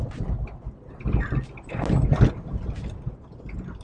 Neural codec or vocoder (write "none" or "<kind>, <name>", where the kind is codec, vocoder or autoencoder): none